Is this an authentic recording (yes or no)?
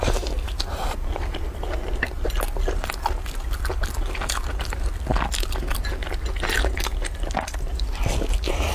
yes